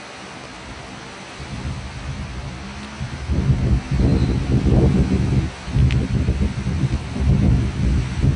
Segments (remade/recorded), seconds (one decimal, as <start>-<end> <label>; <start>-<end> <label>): 0.0-8.4 recorded